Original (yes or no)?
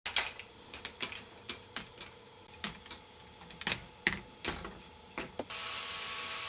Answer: yes